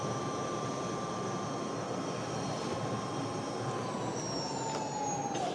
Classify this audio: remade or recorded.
recorded